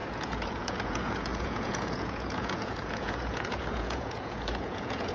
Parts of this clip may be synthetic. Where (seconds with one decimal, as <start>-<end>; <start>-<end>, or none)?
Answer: 0.0-5.1